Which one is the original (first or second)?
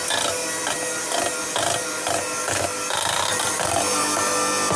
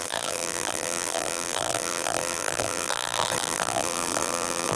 first